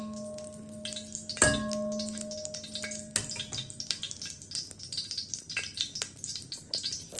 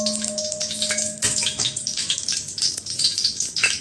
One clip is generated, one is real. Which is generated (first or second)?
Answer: second